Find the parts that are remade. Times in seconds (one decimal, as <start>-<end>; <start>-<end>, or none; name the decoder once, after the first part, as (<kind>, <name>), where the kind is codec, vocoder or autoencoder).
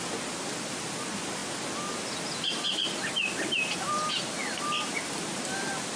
none